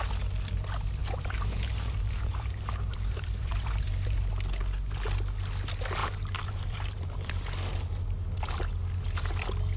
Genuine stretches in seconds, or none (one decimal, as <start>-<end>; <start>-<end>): 0.0-1.0; 4.3-6.0; 7.3-9.8